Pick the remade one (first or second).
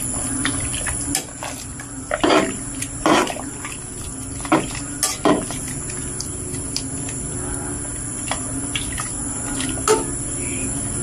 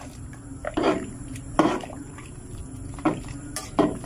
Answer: second